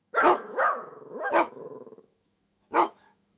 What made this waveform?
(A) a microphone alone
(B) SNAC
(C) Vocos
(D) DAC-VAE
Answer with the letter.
D